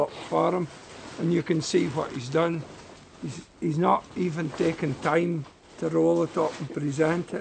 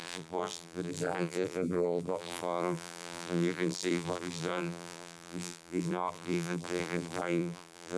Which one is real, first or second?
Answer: first